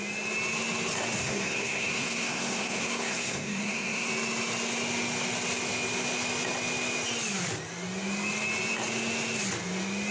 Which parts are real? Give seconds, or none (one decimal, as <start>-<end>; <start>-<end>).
0.0-1.2; 4.1-10.1